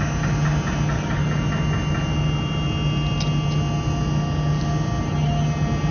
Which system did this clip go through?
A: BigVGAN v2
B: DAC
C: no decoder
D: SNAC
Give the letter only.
C